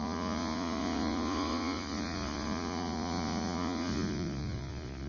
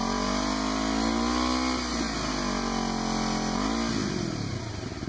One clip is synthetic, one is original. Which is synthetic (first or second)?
first